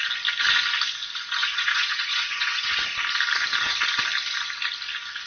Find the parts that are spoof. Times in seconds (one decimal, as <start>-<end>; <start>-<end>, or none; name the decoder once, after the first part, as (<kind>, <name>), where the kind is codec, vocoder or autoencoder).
1.4-2.7 (vocoder, Vocos)

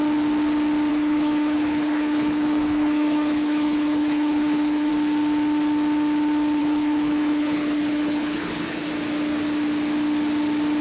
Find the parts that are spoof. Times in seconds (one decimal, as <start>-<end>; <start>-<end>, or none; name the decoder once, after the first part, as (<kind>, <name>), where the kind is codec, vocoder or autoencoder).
0.9-4.9 (codec, HILCodec); 6.6-8.9

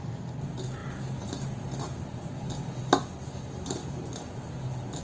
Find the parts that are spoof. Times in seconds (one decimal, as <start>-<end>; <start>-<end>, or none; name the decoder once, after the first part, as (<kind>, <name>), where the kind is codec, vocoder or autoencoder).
0.8-2.3 (vocoder, BigVGAN v2); 3.8-5.0

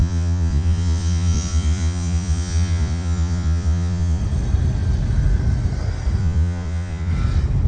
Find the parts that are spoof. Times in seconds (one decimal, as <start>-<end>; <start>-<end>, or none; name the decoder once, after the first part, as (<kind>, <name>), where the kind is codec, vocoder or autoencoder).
0.0-4.2 (vocoder, Vocos); 6.2-7.1

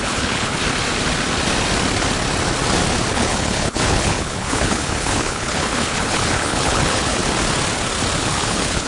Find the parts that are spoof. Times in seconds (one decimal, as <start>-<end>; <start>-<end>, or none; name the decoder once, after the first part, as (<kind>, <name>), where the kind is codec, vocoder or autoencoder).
0.0-0.6 (codec, HILCodec); 3.1-7.2; 8.2-8.9

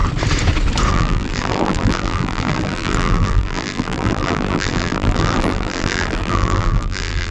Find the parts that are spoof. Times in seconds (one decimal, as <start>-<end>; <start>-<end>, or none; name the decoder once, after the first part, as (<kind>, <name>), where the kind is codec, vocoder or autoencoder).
0.9-7.3 (vocoder, BigVGAN v2)